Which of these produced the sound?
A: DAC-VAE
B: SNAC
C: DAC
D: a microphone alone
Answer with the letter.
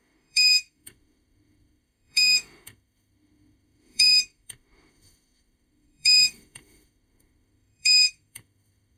A